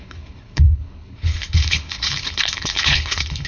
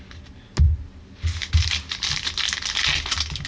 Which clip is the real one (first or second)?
second